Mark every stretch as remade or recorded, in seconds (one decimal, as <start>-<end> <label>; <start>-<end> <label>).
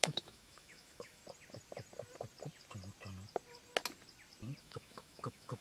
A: 0.0-1.2 remade; 1.2-4.6 recorded; 4.6-5.6 remade